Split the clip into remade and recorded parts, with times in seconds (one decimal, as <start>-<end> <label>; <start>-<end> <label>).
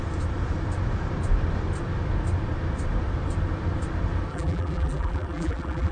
0.0-4.3 recorded; 4.3-5.9 remade